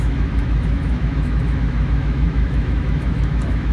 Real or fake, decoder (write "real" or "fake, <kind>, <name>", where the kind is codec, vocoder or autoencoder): fake, autoencoder, DAC-VAE